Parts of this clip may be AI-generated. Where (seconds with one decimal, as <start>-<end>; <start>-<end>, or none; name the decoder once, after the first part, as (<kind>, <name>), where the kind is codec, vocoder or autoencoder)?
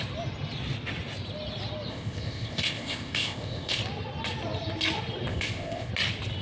1.9-3.8 (codec, ZipCodec); 5.3-5.9